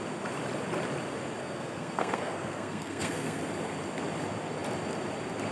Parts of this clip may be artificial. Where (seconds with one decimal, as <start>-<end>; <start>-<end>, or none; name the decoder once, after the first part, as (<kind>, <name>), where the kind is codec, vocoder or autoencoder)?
1.4-3.4 (codec, SNAC)